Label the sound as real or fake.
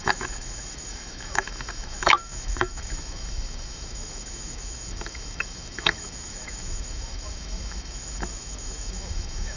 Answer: fake